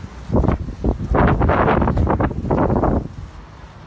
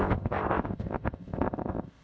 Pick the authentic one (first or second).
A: first